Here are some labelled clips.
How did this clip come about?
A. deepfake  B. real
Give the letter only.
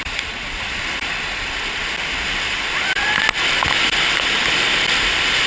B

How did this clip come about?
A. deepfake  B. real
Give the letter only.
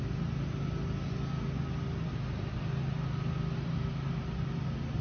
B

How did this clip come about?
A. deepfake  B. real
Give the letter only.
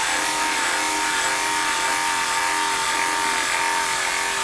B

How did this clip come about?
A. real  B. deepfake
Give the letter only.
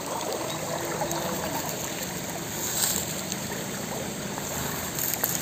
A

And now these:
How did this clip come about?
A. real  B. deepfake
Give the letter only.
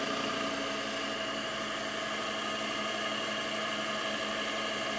A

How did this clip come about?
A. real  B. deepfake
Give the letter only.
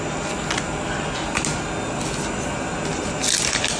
A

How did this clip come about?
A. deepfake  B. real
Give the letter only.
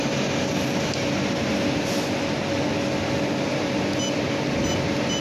B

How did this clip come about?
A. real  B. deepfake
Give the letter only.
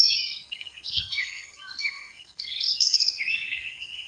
B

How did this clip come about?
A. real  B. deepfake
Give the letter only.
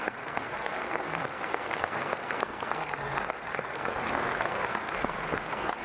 B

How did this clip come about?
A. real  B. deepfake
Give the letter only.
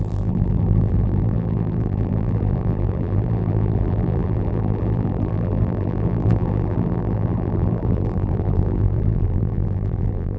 B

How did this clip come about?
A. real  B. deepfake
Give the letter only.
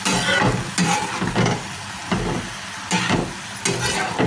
A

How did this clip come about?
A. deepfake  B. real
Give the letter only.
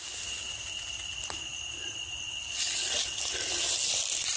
B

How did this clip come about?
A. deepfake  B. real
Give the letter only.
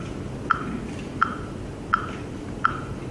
B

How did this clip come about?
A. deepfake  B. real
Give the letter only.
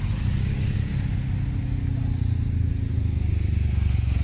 B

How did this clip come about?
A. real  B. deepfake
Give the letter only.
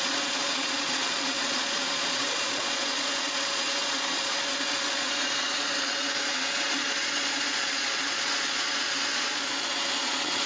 B